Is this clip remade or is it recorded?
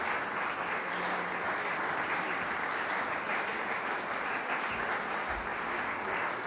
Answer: recorded